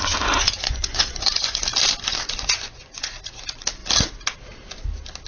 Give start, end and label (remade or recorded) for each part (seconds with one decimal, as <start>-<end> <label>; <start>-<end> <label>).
0.0-1.7 remade; 1.7-2.2 recorded; 2.2-3.8 remade; 3.8-5.3 recorded